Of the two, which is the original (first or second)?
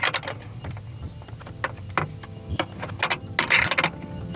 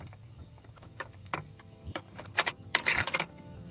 first